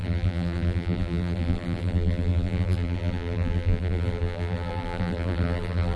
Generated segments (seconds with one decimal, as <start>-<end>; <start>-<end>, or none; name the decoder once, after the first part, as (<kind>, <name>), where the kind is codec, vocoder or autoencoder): 0.0-6.0 (vocoder, BigVGAN v2)